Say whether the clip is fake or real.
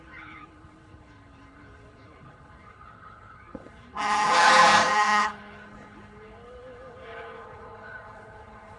fake